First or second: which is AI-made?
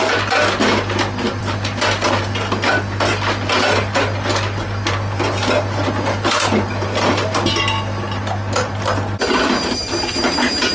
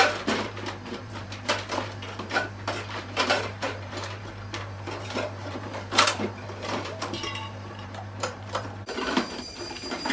second